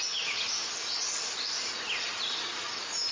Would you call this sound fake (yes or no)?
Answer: no